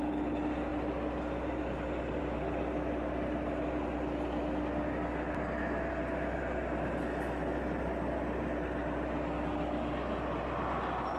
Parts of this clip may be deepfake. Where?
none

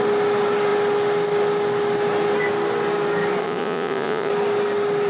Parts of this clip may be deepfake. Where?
3.4-4.3 (vocoder, Vocos)